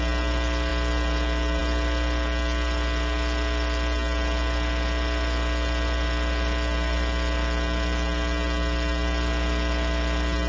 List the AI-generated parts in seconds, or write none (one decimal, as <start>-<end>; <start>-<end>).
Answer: none